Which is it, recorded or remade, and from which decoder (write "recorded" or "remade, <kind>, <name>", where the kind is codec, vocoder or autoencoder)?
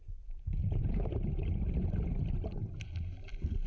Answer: recorded